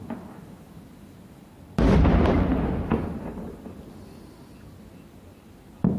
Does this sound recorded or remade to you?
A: recorded